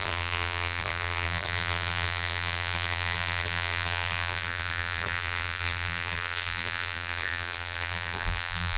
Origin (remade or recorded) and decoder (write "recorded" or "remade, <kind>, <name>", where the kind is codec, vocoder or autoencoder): remade, vocoder, BigVGAN v2